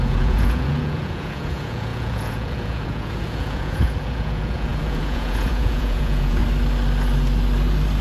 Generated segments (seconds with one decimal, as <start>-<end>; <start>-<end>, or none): 0.0-6.4